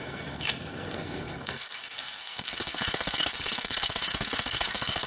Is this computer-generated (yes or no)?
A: yes